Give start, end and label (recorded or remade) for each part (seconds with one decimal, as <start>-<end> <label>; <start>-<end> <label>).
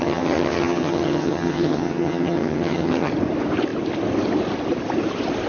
0.0-3.1 remade; 3.1-5.5 recorded